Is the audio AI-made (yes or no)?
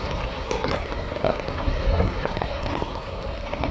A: yes